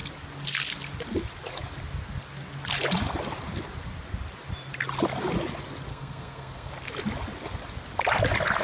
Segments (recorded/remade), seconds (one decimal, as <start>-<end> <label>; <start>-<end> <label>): 0.0-5.9 recorded; 5.9-6.7 remade; 6.7-8.6 recorded